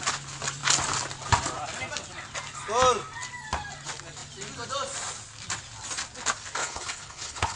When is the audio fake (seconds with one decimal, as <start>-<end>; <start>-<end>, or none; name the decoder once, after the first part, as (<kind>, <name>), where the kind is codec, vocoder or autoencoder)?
6.6-7.6 (codec, HILCodec)